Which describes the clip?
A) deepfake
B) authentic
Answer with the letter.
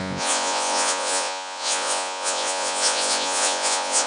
A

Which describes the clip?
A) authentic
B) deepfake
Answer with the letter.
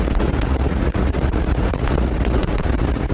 B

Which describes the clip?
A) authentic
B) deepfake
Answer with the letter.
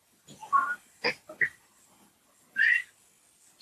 A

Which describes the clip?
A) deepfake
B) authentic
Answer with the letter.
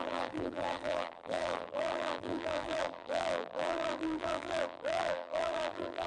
A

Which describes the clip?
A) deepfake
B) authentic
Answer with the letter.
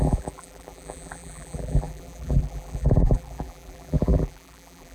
A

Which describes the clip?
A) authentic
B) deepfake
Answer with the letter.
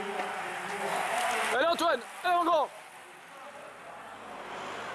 A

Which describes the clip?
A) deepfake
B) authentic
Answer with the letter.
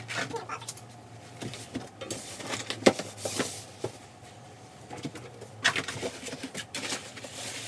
B